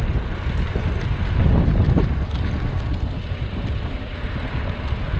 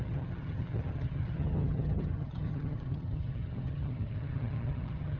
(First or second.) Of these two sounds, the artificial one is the second